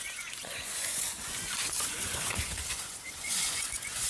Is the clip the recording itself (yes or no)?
no